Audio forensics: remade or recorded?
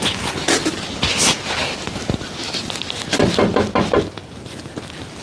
recorded